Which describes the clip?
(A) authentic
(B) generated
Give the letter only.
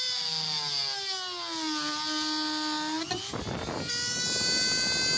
A